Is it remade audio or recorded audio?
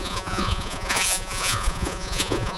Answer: remade